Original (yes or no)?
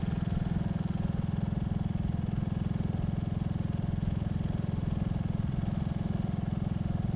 yes